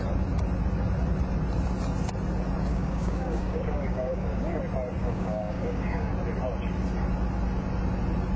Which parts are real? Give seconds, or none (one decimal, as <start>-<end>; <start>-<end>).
0.0-2.7; 4.6-5.0; 6.1-8.4